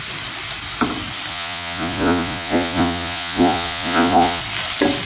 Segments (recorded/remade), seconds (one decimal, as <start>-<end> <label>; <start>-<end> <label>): 0.0-1.3 recorded; 1.3-4.4 remade; 4.4-5.1 recorded